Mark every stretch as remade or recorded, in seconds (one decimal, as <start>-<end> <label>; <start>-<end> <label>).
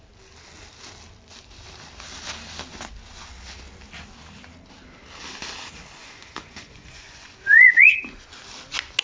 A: 0.0-6.0 recorded; 6.0-8.3 remade; 8.3-9.0 recorded